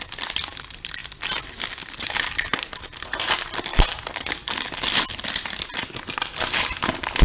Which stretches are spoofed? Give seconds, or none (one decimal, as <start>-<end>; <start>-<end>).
none